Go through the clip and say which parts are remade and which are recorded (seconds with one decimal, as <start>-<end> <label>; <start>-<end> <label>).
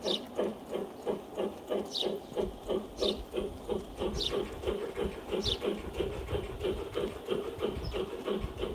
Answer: 0.0-8.7 recorded